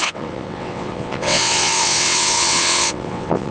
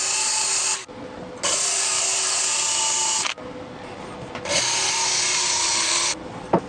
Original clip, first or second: second